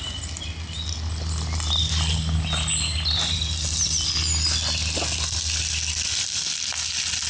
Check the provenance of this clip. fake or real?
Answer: real